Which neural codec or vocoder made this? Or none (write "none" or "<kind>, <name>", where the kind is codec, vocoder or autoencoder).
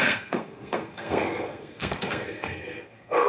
codec, SNAC